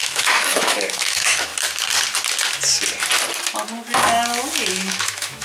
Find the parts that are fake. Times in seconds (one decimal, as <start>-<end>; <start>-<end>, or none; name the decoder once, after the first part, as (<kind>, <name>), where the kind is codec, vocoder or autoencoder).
0.0-1.5 (autoencoder, DAC-VAE); 4.7-5.4